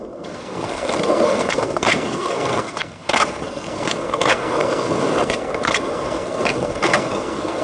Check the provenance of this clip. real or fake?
fake